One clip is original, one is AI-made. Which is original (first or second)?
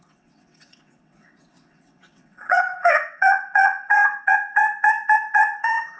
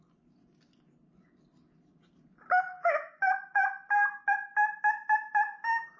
second